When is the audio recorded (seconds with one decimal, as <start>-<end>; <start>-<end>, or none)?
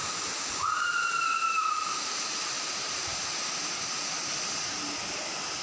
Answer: 0.6-1.6; 2.2-5.6